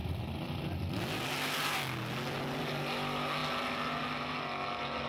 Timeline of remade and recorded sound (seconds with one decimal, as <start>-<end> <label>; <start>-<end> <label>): 0.0-0.8 remade; 0.8-5.1 recorded